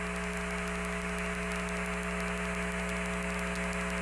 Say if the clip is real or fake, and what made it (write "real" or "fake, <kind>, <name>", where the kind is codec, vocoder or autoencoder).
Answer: real